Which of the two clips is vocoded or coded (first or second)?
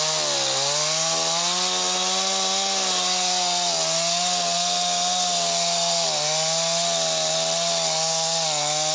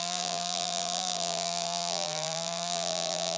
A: second